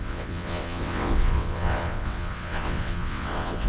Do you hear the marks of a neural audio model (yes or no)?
yes